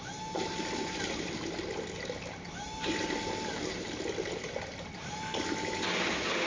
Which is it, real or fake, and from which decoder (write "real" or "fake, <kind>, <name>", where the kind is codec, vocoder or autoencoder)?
real